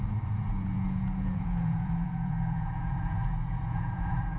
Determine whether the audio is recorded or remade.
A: remade